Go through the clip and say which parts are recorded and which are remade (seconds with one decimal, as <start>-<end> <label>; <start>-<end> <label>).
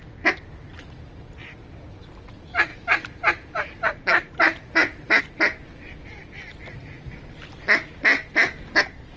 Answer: 0.0-2.7 recorded; 2.7-5.2 remade; 5.2-9.2 recorded